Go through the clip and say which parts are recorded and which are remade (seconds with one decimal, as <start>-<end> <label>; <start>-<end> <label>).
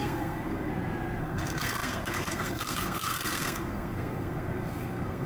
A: 0.0-0.7 remade; 0.7-1.2 recorded; 1.2-5.3 remade